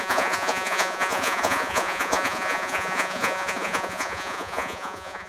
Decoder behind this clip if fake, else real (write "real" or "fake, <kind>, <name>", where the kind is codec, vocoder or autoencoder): fake, vocoder, Vocos